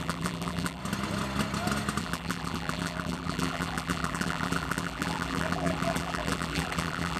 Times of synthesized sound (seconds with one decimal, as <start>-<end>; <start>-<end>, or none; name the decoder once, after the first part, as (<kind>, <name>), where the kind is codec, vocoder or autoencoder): 0.0-0.8 (vocoder, BigVGAN v2); 2.0-7.2